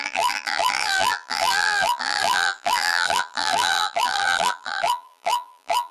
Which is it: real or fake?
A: fake